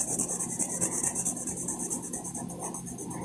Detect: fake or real real